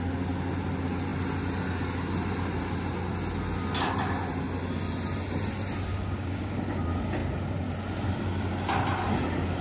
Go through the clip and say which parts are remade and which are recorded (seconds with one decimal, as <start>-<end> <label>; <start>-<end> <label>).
0.0-5.9 recorded; 5.9-6.5 remade; 6.5-9.6 recorded